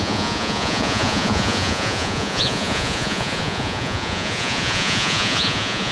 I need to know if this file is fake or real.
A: fake